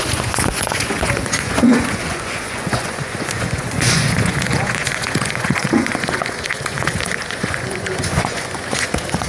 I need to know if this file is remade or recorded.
remade